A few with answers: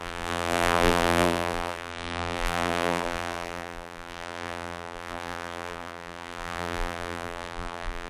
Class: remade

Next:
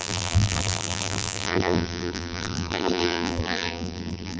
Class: remade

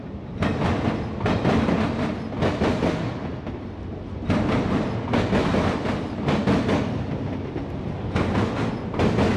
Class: recorded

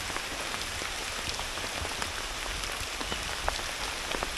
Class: recorded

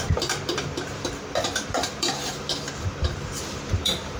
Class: remade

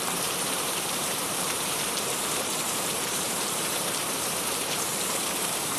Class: remade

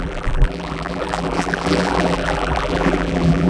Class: remade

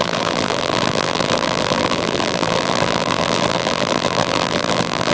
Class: remade